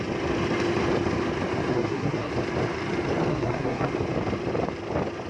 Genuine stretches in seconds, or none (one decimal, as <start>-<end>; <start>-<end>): 0.0-1.7; 2.3-3.3; 3.9-5.3